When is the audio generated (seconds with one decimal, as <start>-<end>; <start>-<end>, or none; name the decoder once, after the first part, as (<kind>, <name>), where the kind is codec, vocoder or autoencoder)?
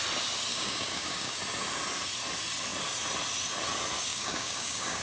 0.5-1.4 (codec, DAC); 4.1-5.0